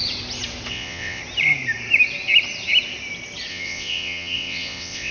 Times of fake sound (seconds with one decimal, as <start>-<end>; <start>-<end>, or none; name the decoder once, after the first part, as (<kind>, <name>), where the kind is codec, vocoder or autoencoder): 0.7-1.2 (vocoder, WaveNeXt); 3.5-5.1